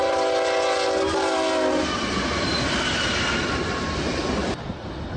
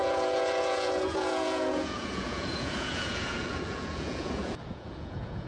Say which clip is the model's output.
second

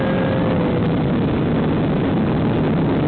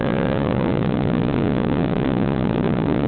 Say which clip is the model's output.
second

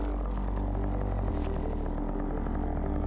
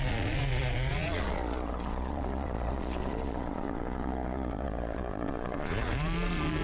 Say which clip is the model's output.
second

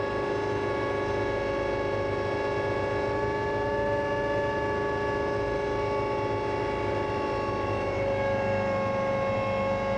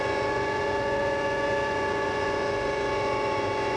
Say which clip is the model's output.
second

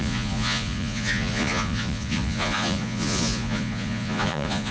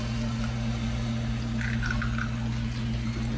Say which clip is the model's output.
first